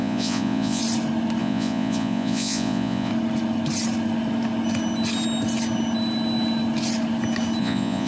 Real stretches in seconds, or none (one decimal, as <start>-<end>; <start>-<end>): 0.8-1.4; 3.1-7.6